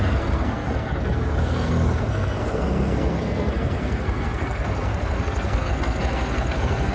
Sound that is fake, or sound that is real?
fake